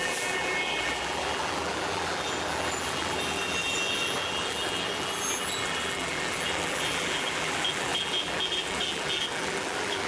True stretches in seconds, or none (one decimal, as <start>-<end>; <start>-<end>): none